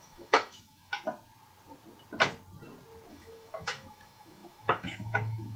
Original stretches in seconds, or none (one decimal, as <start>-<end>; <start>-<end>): 0.9-3.1